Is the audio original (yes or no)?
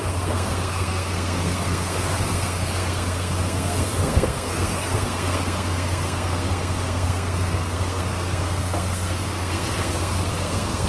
no